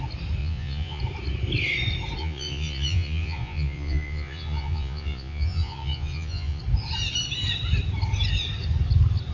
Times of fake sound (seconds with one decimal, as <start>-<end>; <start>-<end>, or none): 0.4-1.0; 2.2-6.6